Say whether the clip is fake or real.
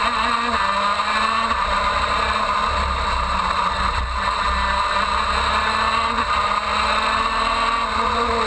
real